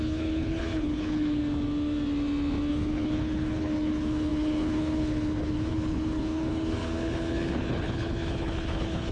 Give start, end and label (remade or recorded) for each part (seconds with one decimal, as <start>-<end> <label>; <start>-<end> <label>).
0.0-1.4 remade; 1.4-2.7 recorded; 2.7-9.1 remade